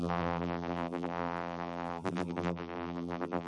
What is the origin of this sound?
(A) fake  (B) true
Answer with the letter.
A